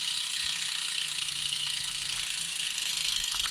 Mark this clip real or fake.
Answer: fake